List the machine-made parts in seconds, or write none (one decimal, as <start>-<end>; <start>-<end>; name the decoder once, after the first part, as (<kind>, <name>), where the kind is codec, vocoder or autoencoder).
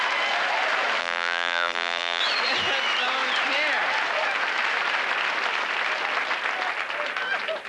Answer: 1.0-2.2 (vocoder, BigVGAN v2)